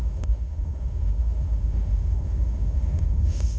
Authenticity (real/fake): fake